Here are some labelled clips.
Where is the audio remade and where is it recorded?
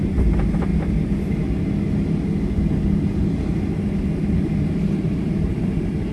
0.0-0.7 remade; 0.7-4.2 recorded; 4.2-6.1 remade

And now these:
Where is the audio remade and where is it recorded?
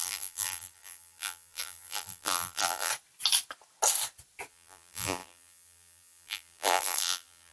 0.0-2.9 remade; 2.9-4.5 recorded; 4.5-7.5 remade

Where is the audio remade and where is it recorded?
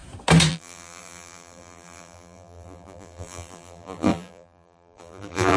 0.0-0.5 recorded; 0.5-5.6 remade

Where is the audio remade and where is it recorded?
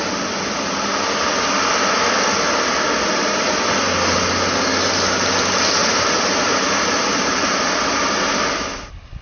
0.0-5.8 recorded; 5.8-7.6 remade; 7.6-9.2 recorded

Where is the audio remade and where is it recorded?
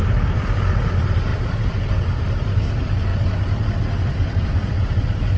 0.0-3.1 remade; 3.1-4.0 recorded; 4.0-5.4 remade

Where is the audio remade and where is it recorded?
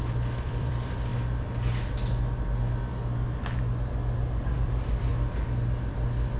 0.0-1.1 remade; 1.1-4.5 recorded; 4.5-6.4 remade